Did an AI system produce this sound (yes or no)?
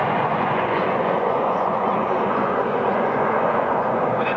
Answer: yes